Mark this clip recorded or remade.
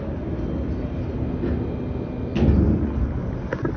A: recorded